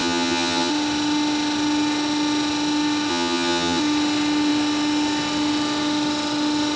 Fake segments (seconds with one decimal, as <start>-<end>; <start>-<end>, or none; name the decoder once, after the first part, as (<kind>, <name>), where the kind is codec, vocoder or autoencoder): 0.0-0.7 (vocoder, HiFi-GAN); 3.1-3.8